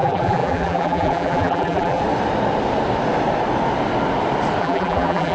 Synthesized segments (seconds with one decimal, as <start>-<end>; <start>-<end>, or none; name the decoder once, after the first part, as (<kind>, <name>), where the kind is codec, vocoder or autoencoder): 0.0-2.0 (vocoder, BigVGAN v2); 4.6-5.3

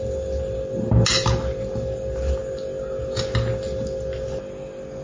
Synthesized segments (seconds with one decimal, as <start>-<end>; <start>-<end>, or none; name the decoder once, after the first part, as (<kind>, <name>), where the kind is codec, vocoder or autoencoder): none

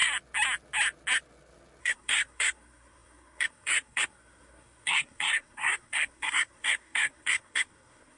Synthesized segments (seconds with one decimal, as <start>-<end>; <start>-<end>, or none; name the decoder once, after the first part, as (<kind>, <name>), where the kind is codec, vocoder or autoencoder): 1.8-8.2 (codec, SNAC)